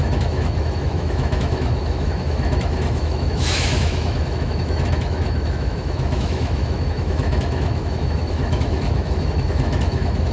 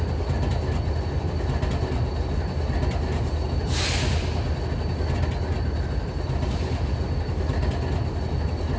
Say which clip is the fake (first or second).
first